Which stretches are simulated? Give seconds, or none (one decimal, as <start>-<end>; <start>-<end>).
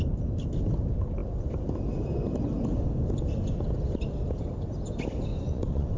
5.3-6.0